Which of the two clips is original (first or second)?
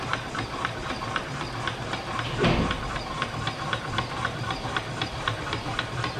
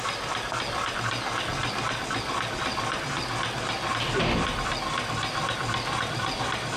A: second